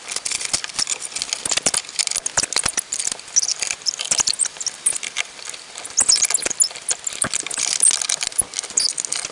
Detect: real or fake real